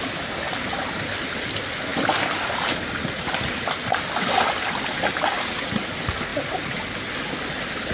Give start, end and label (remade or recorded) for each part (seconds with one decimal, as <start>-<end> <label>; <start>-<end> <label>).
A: 0.0-7.9 recorded